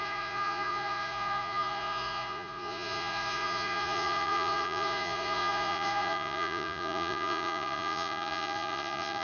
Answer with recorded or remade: remade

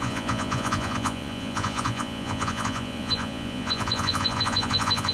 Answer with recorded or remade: remade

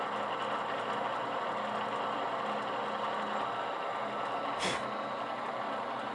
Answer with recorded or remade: recorded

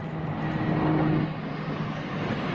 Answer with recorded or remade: recorded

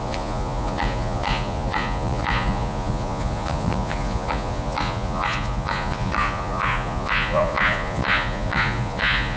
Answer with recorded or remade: remade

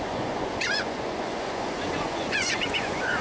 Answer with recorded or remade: remade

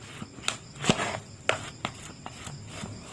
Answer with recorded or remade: recorded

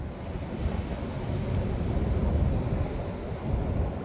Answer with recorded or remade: recorded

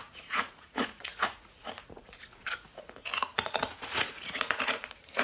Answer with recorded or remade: remade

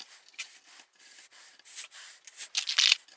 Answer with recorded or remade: recorded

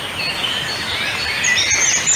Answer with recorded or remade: recorded